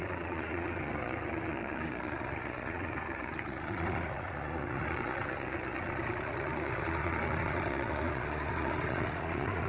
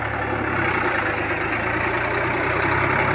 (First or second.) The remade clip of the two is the first